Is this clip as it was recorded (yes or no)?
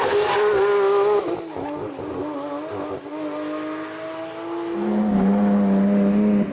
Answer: yes